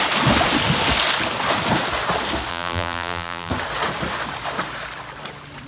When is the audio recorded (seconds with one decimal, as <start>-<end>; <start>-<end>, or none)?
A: 0.0-2.5; 3.5-5.7